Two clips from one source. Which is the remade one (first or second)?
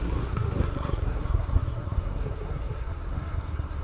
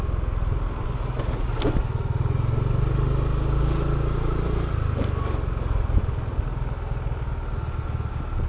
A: first